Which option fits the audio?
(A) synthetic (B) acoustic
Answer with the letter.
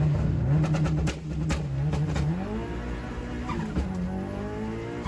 B